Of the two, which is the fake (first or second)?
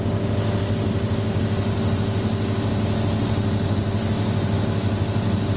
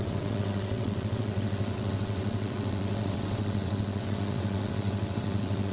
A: second